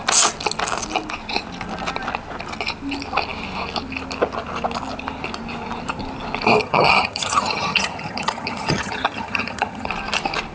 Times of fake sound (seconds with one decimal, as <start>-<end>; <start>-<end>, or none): 6.6-9.9